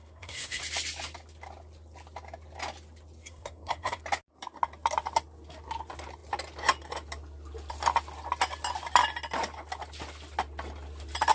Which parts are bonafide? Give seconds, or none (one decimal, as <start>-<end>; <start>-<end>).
0.6-3.2; 4.0-11.3